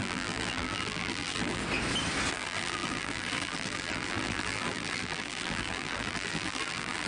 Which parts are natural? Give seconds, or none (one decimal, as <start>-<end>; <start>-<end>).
1.6-2.3